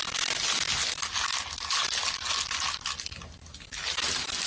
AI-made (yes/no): no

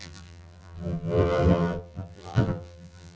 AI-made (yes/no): yes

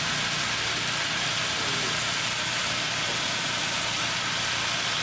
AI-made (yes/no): no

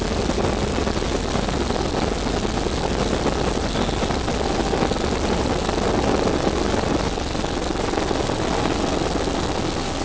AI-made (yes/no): no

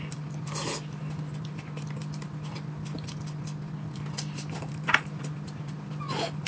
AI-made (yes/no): no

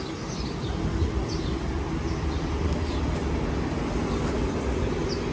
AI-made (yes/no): no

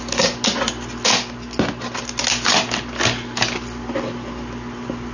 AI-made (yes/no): no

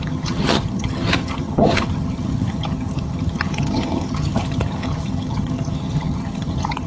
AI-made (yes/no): yes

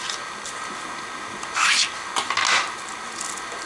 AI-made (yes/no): no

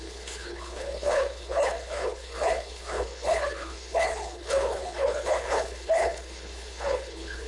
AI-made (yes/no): yes